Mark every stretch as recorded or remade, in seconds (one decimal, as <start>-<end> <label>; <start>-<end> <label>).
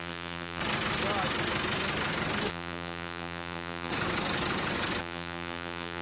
0.0-0.6 remade; 0.6-2.5 recorded; 2.5-3.9 remade; 3.9-5.0 recorded; 5.0-6.0 remade